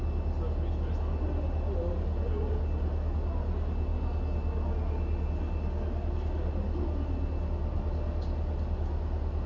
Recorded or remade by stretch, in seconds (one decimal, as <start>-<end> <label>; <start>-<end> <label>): 0.0-9.5 recorded